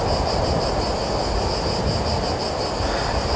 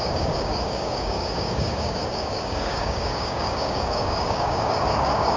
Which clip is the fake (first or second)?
second